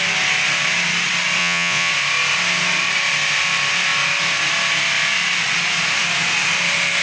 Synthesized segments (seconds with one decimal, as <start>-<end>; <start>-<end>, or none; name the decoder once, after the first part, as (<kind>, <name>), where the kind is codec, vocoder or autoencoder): 1.4-1.9 (vocoder, Vocos)